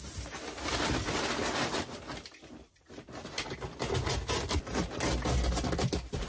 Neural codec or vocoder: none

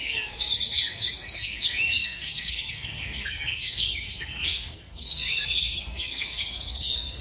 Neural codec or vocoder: codec, SNAC